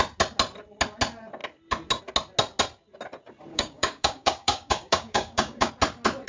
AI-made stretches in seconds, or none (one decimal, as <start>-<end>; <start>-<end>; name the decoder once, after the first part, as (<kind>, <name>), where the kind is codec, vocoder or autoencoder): 3.5-5.7 (codec, DAC)